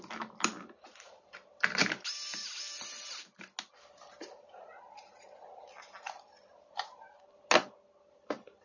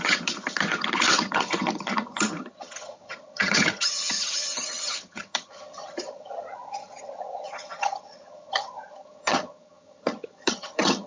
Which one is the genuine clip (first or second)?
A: first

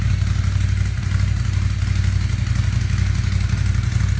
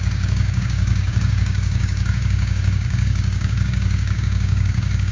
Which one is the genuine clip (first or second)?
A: first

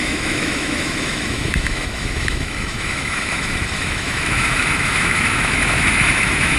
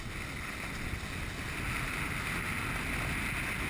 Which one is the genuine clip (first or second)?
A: second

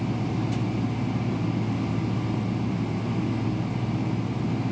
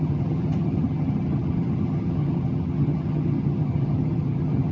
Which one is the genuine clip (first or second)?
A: first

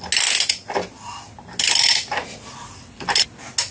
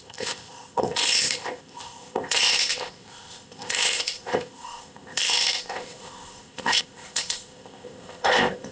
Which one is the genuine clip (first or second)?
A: first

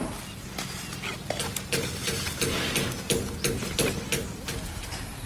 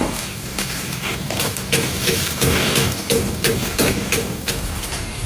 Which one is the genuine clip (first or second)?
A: first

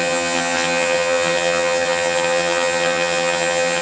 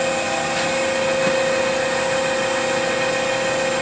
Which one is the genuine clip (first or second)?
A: second